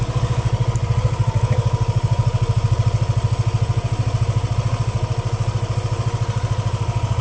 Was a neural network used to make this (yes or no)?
no